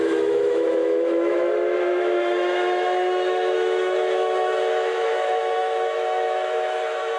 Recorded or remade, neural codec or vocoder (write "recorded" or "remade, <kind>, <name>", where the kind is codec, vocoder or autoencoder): remade, autoencoder, DAC-VAE